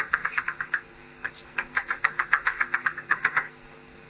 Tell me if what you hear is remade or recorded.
remade